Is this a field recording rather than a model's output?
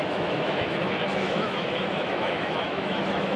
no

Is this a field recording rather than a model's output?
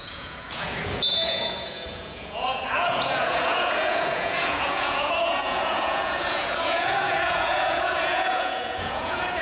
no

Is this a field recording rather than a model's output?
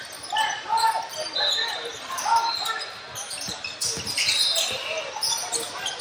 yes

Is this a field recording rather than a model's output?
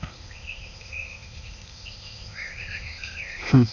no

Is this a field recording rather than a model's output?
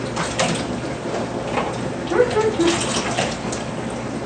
yes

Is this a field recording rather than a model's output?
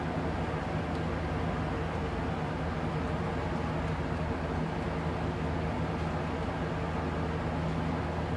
yes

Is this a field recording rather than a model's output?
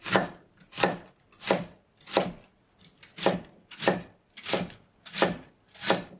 yes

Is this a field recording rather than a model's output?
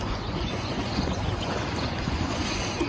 no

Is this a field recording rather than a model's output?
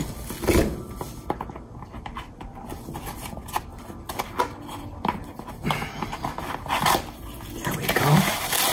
yes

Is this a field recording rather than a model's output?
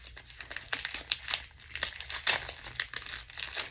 yes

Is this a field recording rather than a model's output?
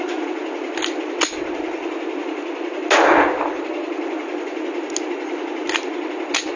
yes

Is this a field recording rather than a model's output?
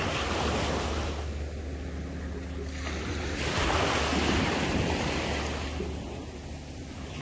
yes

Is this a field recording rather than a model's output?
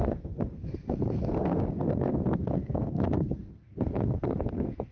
no